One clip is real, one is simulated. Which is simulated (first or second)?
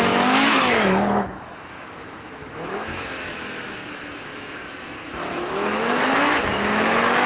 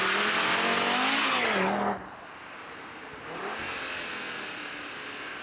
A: first